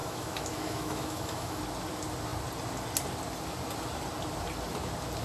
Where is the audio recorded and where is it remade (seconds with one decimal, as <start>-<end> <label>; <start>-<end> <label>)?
0.0-1.6 remade; 1.6-5.2 recorded